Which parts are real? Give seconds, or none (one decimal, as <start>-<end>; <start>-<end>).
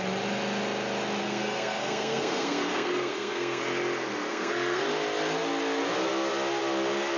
0.0-1.2; 3.6-4.3; 4.8-7.2